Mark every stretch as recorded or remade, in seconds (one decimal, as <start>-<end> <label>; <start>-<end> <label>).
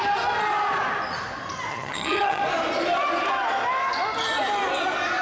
0.0-1.7 recorded; 1.7-2.4 remade; 2.4-5.2 recorded